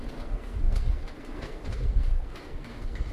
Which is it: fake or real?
fake